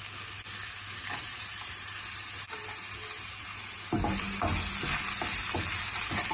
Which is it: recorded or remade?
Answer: recorded